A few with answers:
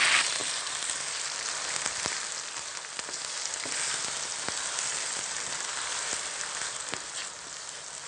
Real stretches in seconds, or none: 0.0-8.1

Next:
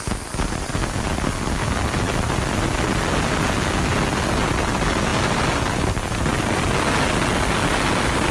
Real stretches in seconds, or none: 0.0-8.3